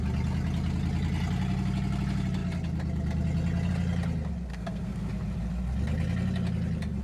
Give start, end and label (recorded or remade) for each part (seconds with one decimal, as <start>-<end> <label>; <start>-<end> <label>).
0.0-4.5 recorded; 4.5-5.1 remade; 5.1-7.0 recorded